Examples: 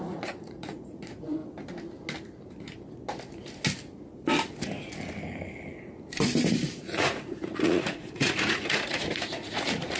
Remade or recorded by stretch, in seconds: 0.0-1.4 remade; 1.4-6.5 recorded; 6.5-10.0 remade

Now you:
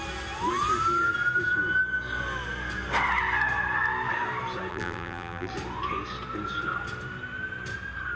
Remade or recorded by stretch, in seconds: 0.0-4.7 recorded; 4.7-5.5 remade; 5.5-8.2 recorded

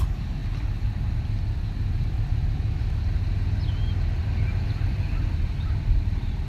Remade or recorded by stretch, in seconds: 0.0-6.5 recorded

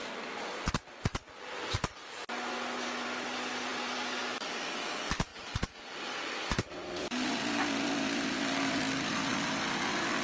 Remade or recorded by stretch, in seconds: 0.0-5.3 recorded; 5.3-8.4 remade; 8.4-10.2 recorded

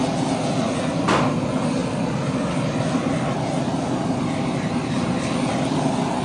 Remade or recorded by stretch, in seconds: 0.0-6.2 recorded